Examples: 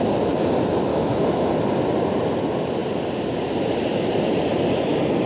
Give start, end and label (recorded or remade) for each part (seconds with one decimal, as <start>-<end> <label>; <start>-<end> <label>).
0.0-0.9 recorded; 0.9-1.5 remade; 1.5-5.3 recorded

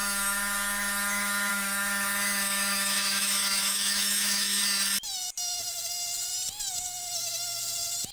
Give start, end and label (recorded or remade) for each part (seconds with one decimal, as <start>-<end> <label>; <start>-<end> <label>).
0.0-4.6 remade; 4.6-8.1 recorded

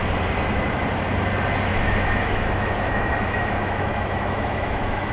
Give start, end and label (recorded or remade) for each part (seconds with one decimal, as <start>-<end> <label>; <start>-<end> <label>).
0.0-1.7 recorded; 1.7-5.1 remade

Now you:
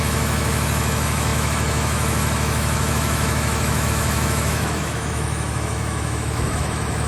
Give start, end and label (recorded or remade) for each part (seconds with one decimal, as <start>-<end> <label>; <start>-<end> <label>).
0.0-7.1 remade

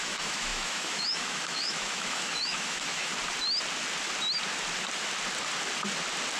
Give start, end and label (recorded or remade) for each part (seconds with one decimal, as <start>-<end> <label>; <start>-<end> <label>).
0.0-3.1 remade; 3.1-6.4 recorded